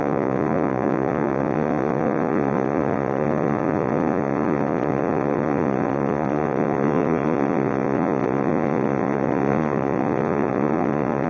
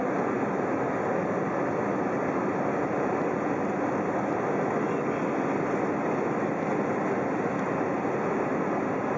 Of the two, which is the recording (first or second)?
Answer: second